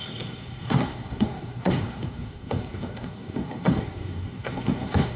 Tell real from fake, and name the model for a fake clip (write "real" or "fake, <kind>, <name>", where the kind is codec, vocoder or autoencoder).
fake, codec, SNAC